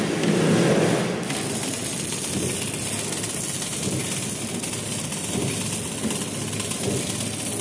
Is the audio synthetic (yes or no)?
no